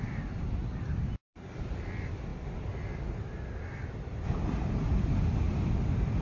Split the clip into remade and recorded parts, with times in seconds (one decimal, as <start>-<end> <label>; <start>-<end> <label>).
0.0-6.2 recorded